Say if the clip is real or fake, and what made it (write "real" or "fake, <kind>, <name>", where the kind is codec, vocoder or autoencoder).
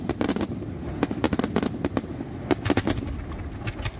real